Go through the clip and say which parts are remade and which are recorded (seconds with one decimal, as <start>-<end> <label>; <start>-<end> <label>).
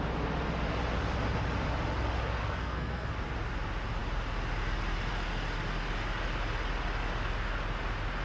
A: 0.0-2.4 recorded; 2.4-3.1 remade; 3.1-8.2 recorded